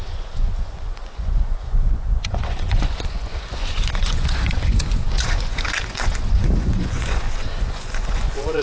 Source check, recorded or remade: remade